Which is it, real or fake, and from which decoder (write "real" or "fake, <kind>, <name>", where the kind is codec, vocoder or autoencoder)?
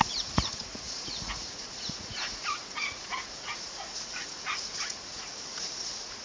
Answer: fake, vocoder, Vocos